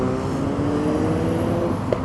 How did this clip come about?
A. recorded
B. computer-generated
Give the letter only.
A